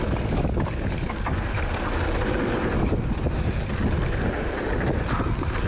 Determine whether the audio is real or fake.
real